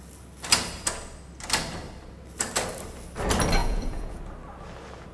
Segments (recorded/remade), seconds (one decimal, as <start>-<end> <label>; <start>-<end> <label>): 0.0-3.6 recorded; 3.6-4.2 remade; 4.2-5.1 recorded